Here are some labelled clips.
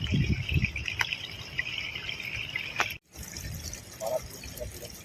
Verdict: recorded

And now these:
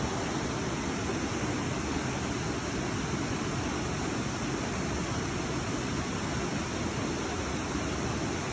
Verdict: recorded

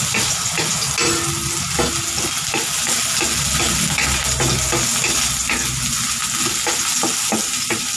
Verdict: recorded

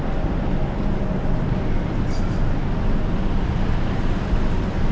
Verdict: recorded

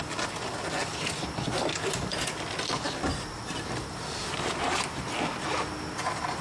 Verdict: recorded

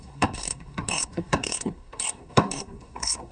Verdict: remade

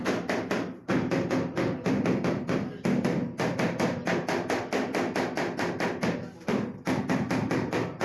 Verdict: recorded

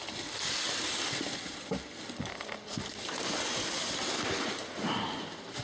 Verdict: recorded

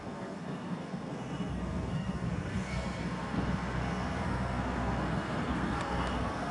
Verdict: remade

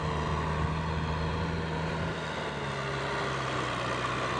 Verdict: recorded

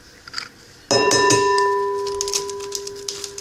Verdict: recorded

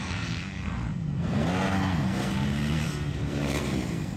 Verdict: remade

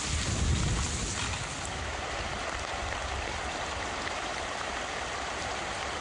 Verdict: recorded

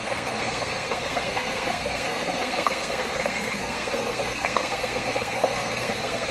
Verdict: remade